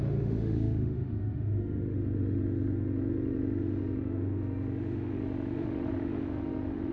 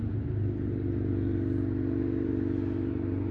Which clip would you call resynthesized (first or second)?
first